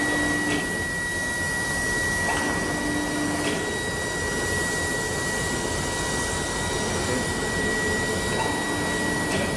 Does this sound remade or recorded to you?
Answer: recorded